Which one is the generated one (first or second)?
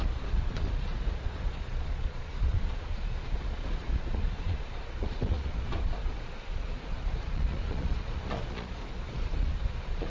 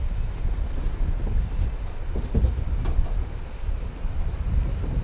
first